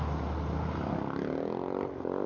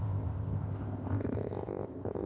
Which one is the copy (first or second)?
second